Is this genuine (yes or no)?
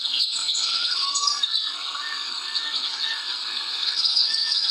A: no